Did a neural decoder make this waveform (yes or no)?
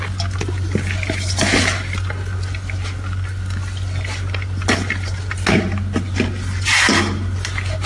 no